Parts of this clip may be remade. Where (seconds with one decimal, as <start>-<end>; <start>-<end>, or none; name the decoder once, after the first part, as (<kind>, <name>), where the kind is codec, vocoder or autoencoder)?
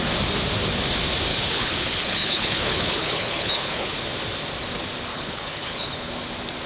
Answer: 1.3-4.0 (codec, HILCodec); 5.1-6.1